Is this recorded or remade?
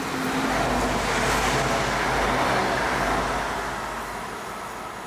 recorded